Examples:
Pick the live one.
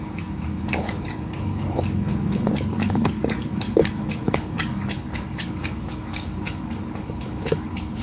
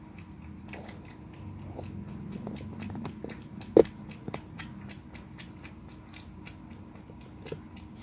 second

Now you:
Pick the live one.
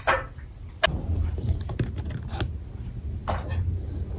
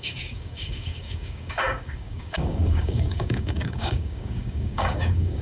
first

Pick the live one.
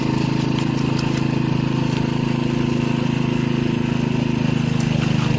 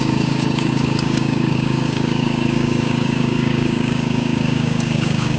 first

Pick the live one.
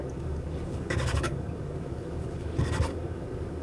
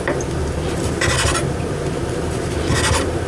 second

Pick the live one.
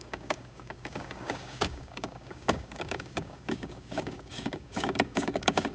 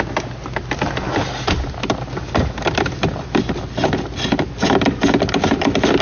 second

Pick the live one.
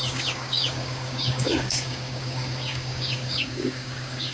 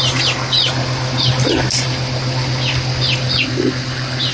second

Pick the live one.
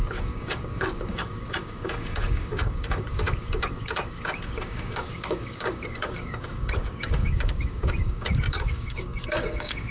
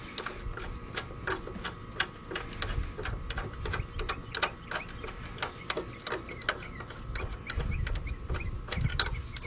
second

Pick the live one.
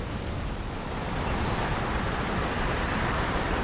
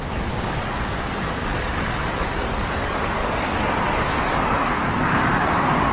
first